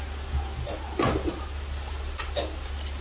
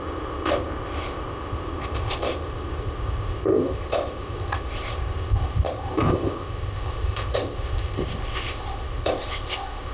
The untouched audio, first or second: first